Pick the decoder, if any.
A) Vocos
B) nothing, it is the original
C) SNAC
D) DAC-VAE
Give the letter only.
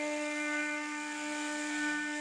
C